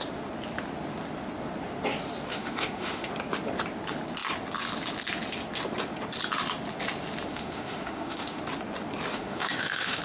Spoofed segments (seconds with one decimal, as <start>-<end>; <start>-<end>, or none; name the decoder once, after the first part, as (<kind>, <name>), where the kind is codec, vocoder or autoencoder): 2.3-3.1 (autoencoder, DAC-VAE); 7.3-8.4; 9.1-10.0